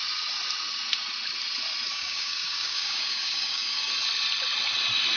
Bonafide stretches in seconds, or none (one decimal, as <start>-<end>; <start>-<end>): 0.0-1.9; 3.9-5.2